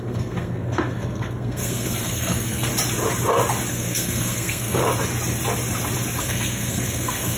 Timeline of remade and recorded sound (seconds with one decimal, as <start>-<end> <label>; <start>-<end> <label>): 0.0-2.7 remade; 2.7-3.7 recorded; 3.7-4.8 remade; 4.8-6.2 recorded; 6.2-7.4 remade